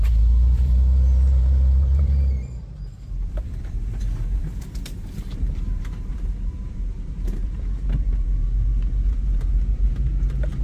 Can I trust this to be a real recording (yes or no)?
no